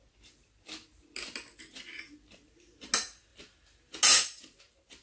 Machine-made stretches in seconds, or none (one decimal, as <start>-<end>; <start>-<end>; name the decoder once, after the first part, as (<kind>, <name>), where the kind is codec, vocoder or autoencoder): none